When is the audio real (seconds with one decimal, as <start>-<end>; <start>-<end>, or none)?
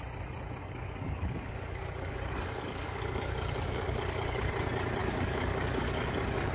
0.0-0.6; 4.5-5.0